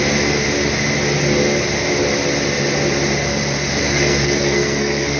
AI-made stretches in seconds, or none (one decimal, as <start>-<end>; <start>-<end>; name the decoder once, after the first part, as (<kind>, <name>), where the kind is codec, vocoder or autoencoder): 3.8-5.2 (codec, SNAC)